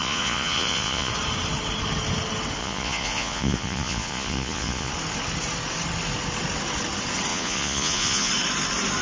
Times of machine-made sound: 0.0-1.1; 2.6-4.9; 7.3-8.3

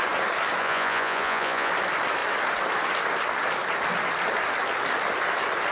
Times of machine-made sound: 0.6-1.7

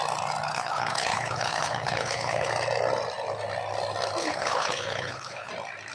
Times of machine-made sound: 0.5-2.5; 4.2-5.5

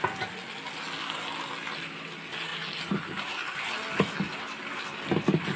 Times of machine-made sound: none

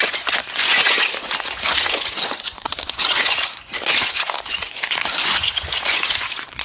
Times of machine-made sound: 0.0-6.6

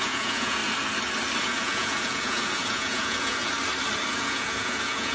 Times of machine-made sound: 0.0-0.6; 1.4-3.4; 4.1-5.1

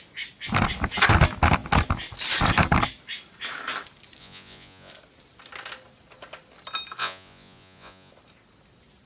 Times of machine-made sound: 4.2-4.9; 7.0-8.1

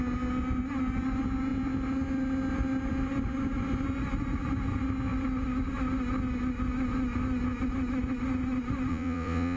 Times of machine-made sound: 8.9-9.6